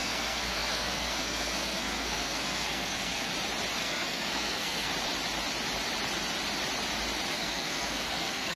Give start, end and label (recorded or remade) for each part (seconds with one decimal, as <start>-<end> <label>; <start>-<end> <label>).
0.0-3.3 remade; 3.3-3.8 recorded; 3.8-4.9 remade; 4.9-7.3 recorded; 7.3-8.6 remade